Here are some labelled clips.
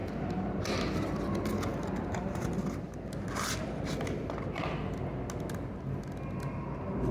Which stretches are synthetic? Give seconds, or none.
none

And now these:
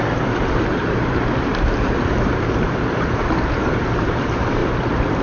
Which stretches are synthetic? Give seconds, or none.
0.0-4.6 (vocoder, BigVGAN v2)

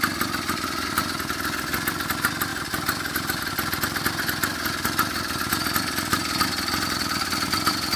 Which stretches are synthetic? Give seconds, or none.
2.5-3.4 (vocoder, BigVGAN v2)

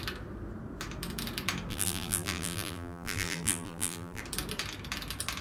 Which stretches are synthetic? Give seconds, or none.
1.7-4.2 (vocoder, BigVGAN v2)

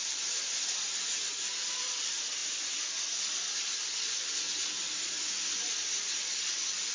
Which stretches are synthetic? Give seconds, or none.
none